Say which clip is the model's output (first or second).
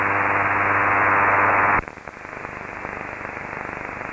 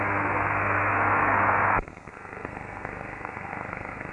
second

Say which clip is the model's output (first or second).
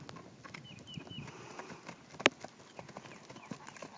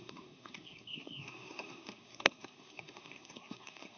second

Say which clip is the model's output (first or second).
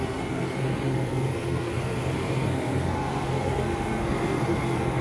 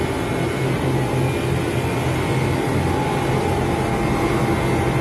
first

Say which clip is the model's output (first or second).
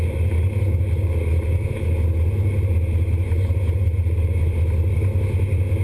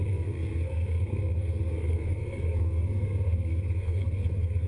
second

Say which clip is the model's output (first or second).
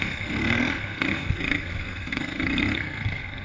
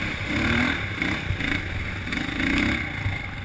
first